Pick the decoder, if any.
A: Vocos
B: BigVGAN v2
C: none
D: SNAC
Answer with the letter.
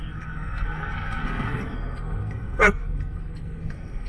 D